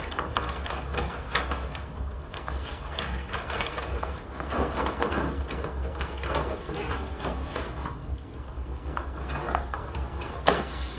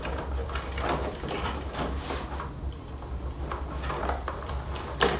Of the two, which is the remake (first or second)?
first